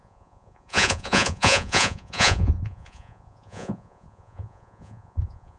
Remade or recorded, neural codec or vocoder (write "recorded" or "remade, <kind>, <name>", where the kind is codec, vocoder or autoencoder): remade, vocoder, Vocos